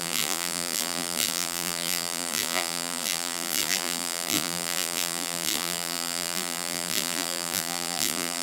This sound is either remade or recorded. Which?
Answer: remade